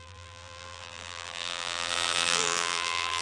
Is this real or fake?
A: fake